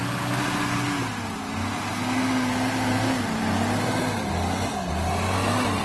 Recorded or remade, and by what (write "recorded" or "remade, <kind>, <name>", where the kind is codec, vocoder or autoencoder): recorded